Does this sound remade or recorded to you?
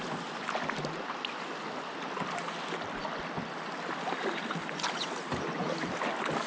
recorded